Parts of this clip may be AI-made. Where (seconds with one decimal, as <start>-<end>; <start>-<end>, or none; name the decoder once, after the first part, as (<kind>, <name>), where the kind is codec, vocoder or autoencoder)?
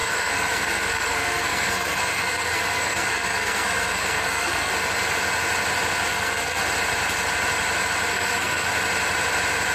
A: 0.0-4.7 (codec, SNAC); 6.1-6.6; 8.1-8.7